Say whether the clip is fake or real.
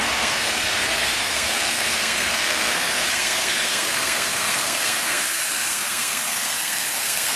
fake